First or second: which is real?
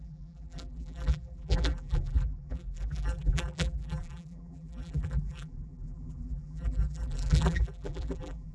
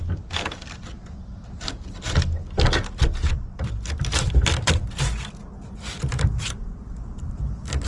second